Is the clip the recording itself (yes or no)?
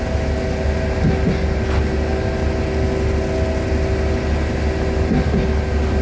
yes